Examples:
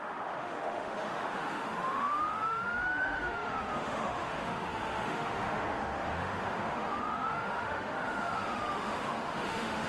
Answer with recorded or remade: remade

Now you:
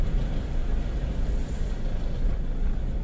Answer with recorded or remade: recorded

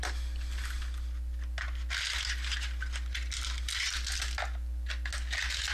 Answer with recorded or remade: recorded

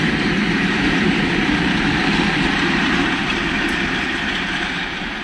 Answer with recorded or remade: remade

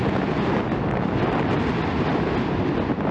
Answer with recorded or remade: recorded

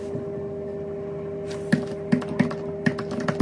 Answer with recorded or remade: recorded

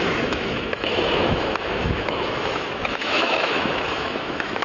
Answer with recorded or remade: remade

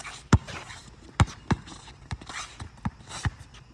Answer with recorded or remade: recorded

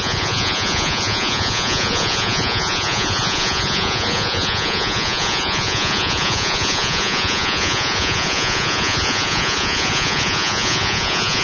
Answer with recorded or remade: remade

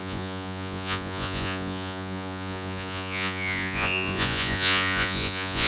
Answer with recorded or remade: remade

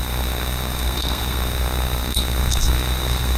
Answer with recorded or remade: remade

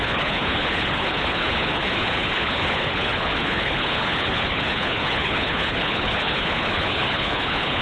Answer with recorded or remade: remade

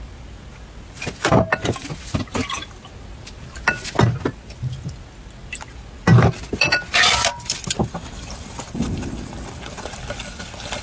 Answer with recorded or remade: recorded